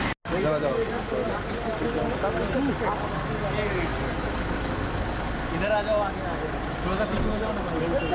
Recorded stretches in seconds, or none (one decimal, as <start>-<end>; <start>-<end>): 0.0-8.1